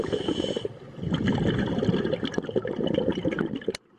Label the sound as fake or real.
real